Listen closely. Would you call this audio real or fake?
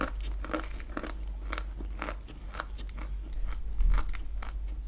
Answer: real